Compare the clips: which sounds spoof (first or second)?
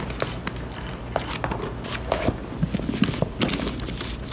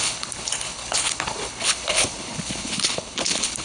second